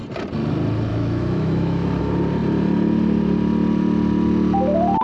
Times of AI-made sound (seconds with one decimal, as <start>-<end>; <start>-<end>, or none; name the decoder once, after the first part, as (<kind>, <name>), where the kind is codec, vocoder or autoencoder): 0.9-2.0 (autoencoder, DAC-VAE)